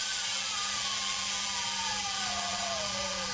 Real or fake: fake